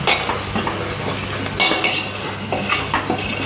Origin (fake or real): real